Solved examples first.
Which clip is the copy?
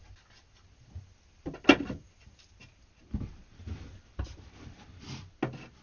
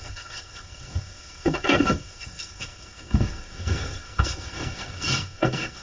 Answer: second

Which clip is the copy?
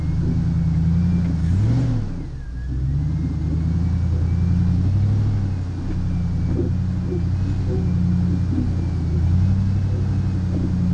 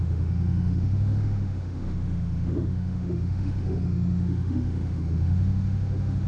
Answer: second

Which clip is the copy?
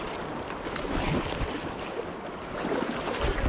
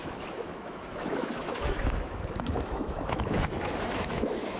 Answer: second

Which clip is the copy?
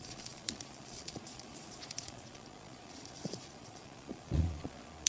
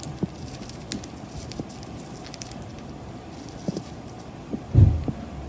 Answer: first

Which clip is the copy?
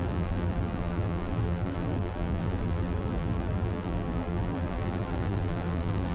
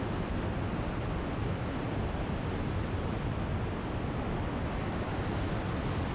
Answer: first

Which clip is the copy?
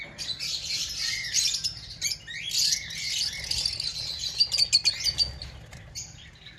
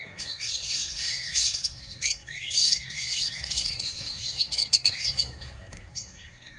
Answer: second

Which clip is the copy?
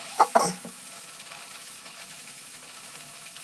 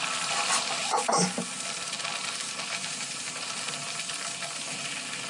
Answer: first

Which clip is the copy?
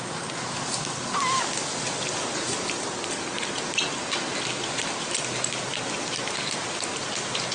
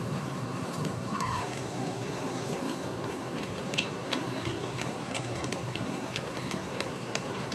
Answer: second